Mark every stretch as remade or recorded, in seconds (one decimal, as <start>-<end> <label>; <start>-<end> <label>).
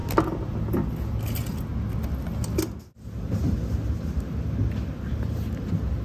0.0-6.0 recorded